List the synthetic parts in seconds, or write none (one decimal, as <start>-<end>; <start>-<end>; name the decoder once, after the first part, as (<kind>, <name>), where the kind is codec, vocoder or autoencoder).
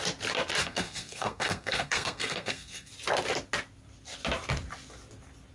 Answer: 0.6-2.9 (codec, SNAC)